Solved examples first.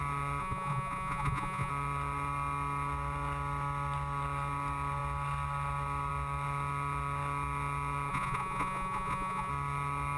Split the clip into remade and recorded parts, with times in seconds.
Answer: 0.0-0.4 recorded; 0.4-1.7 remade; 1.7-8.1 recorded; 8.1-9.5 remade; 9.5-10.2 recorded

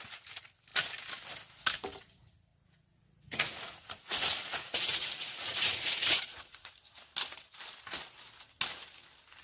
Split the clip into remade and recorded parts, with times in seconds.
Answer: 0.0-2.5 recorded; 2.5-6.7 remade; 6.7-9.4 recorded

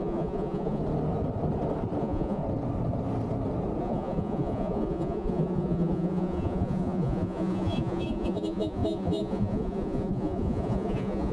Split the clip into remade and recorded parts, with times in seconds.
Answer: 0.0-0.8 remade; 0.8-2.0 recorded; 2.0-2.4 remade; 2.4-3.8 recorded; 3.8-11.3 remade

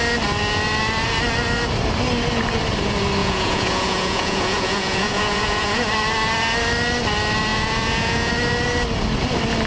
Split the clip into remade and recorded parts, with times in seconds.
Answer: 0.0-3.2 recorded; 3.2-5.9 remade; 5.9-7.5 recorded; 7.5-8.3 remade; 8.3-9.7 recorded

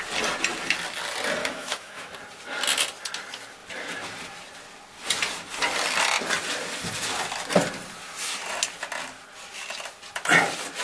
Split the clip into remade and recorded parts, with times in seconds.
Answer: 0.0-1.4 recorded; 1.4-2.1 remade; 2.1-10.8 recorded